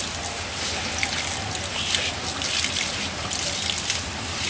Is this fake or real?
real